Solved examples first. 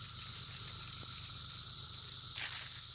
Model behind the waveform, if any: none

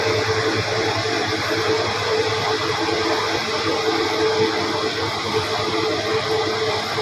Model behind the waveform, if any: none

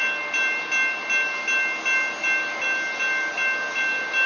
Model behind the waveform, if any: none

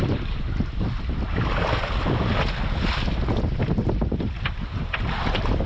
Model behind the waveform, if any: none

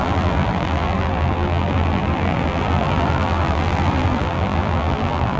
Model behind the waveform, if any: vocoder, BigVGAN v2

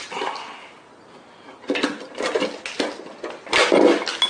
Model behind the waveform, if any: none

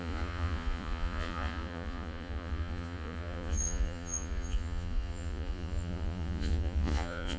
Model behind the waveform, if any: vocoder, Vocos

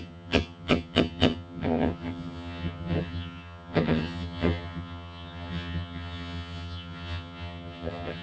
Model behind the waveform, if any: vocoder, HiFi-GAN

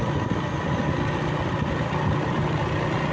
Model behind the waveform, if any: none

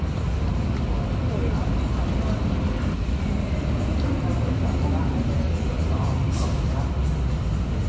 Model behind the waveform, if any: none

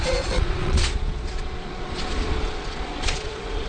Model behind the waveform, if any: vocoder, Vocos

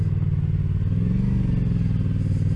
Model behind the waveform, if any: none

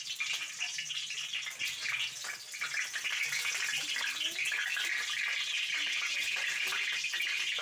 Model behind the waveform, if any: none